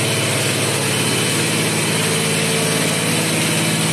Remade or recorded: recorded